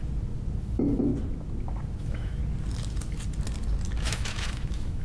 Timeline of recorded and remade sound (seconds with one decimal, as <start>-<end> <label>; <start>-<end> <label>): 0.0-0.6 recorded; 0.6-1.1 remade; 1.1-2.0 recorded; 2.0-2.4 remade; 2.4-4.0 recorded; 4.0-5.0 remade